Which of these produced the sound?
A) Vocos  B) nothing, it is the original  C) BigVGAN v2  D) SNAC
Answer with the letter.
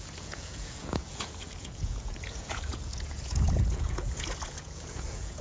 A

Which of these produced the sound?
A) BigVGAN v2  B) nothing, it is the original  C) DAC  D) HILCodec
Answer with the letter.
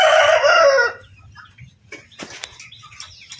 B